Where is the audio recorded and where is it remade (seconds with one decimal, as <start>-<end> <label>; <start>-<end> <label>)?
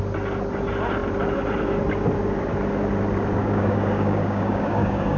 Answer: 0.0-3.4 recorded; 3.4-5.2 remade